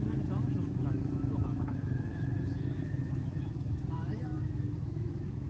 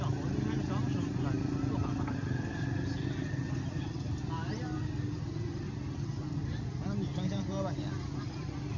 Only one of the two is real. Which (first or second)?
second